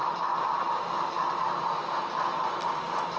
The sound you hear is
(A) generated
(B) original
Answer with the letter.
B